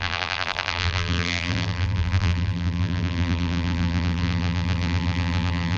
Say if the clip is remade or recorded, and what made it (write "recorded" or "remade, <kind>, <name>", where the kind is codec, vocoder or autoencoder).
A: remade, vocoder, BigVGAN v2